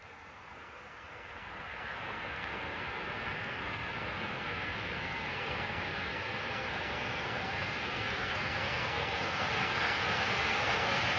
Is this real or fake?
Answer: fake